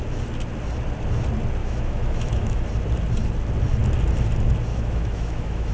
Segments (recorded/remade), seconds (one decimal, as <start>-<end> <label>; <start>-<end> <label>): 0.0-1.6 recorded; 1.6-2.7 remade; 2.7-4.7 recorded; 4.7-5.7 remade